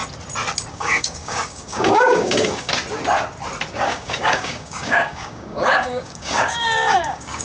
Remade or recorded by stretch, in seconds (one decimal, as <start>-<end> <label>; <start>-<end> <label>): 0.0-0.7 recorded; 0.7-2.7 remade; 2.7-3.7 recorded; 3.7-7.4 remade